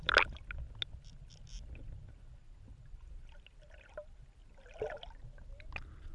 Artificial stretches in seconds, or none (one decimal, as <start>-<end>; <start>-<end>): none